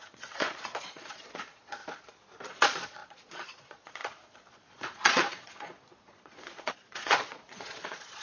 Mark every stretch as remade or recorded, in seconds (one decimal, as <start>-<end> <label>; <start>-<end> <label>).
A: 0.0-1.8 remade; 1.8-2.5 recorded; 2.5-8.2 remade